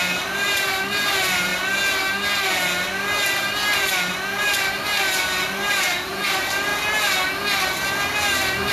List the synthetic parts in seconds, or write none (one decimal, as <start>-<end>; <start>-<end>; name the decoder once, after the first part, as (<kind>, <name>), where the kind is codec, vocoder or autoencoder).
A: 0.0-1.5 (vocoder, BigVGAN v2); 4.4-6.7